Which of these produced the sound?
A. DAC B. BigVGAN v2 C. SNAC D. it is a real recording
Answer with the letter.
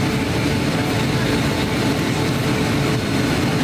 D